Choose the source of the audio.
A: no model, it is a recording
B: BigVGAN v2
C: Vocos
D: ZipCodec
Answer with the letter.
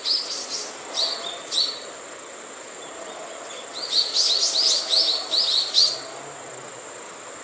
A